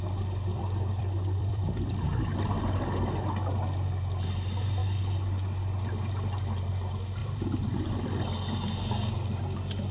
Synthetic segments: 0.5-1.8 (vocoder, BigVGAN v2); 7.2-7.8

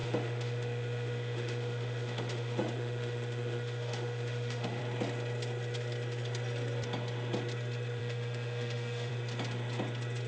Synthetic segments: 0.0-4.8 (autoencoder, DAC-VAE); 8.0-9.1

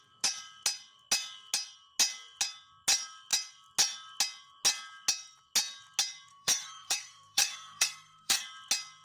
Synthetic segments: 6.3-8.4 (codec, SNAC)